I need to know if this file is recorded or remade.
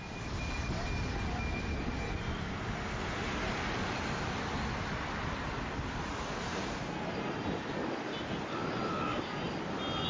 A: recorded